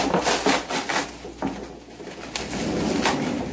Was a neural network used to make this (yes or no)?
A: no